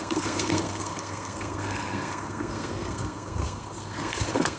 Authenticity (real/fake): fake